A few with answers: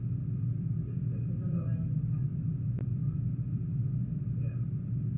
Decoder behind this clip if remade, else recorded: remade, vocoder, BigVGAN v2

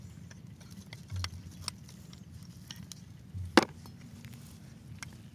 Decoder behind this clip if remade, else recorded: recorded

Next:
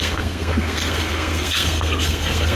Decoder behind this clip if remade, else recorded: remade, codec, SNAC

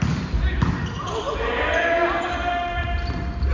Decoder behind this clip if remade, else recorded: recorded